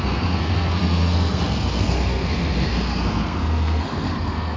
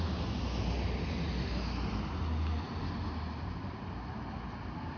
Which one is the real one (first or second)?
second